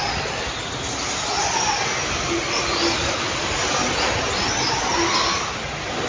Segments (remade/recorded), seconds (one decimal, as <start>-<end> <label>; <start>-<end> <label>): 0.0-6.1 recorded